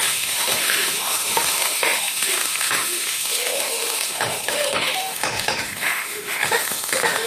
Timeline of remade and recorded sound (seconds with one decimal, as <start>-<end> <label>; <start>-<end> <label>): 0.0-7.3 remade